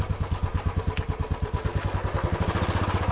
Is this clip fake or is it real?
real